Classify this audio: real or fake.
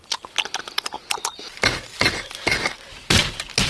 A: real